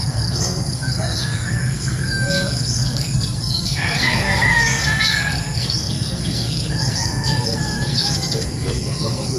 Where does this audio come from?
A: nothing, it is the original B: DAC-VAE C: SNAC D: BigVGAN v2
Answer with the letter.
C